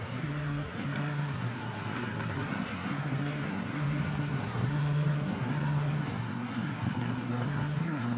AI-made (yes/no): yes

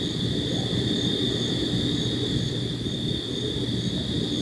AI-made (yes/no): no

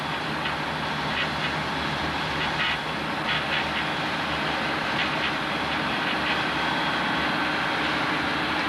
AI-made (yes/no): no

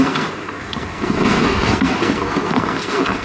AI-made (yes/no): yes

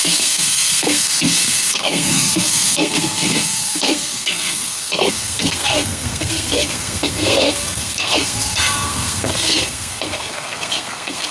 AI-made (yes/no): yes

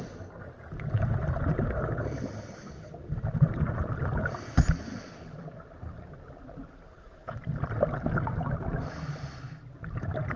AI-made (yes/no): no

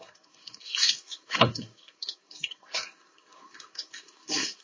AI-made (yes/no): yes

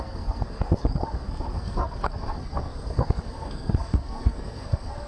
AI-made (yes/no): yes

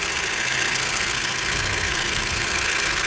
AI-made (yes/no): yes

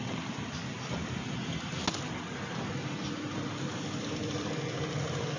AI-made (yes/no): no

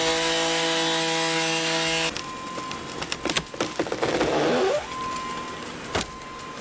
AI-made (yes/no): no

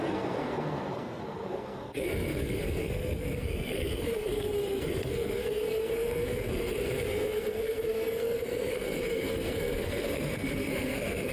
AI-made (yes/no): yes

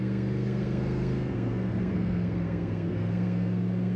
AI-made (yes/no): yes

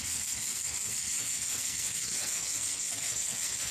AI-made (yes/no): yes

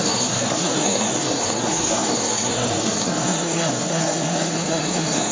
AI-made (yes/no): yes